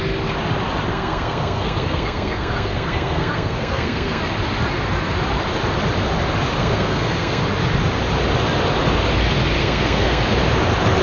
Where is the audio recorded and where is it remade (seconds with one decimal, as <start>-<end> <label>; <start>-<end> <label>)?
0.0-0.9 recorded; 0.9-4.2 remade; 4.2-6.6 recorded; 6.6-7.4 remade; 7.4-9.6 recorded; 9.6-10.2 remade; 10.2-11.0 recorded